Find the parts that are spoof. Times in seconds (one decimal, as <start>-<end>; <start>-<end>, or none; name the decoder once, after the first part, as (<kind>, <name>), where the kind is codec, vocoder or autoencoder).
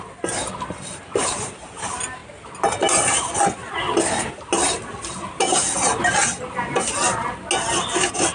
none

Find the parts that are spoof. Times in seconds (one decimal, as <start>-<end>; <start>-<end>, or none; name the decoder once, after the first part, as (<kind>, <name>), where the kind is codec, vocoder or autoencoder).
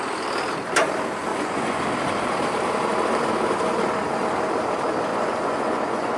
1.3-1.8 (vocoder, Vocos); 5.1-6.2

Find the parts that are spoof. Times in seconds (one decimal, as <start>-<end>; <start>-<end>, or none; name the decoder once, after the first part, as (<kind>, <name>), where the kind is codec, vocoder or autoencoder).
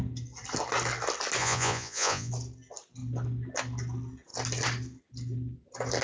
1.4-2.3 (vocoder, Vocos)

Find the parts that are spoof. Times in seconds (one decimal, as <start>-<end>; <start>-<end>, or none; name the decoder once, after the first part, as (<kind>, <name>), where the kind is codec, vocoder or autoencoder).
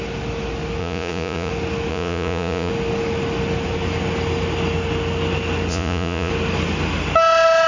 0.8-1.5 (vocoder, Vocos); 1.9-2.7; 5.7-6.3